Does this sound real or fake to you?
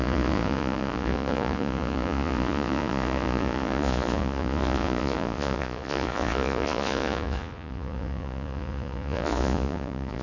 fake